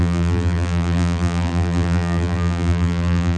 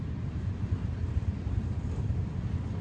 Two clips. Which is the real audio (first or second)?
second